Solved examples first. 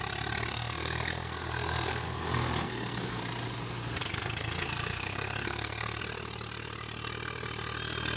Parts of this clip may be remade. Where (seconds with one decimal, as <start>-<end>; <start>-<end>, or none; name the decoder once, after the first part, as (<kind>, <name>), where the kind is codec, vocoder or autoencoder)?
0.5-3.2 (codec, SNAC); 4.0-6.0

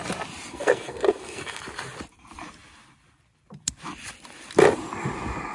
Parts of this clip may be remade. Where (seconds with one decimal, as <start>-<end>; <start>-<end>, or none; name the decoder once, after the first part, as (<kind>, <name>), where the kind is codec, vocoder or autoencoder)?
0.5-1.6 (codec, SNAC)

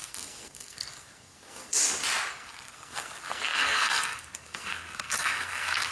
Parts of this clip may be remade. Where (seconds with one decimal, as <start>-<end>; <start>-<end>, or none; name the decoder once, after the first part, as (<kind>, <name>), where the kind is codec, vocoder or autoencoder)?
0.0-1.8 (codec, SNAC); 2.3-5.9